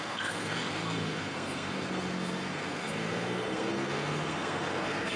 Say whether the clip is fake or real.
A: fake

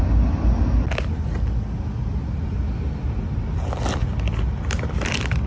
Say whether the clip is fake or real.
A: real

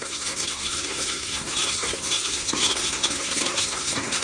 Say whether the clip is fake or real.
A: fake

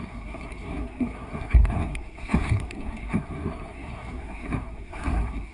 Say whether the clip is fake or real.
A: fake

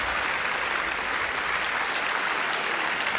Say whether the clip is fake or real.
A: real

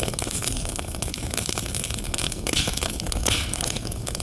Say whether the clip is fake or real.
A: fake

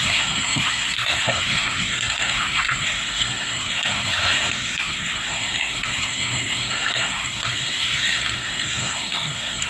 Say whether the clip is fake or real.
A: fake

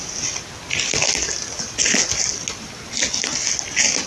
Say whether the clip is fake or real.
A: real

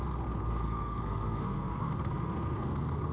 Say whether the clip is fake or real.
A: fake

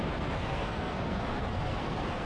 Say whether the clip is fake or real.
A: fake